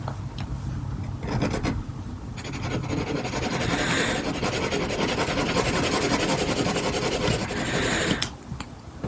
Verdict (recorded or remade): recorded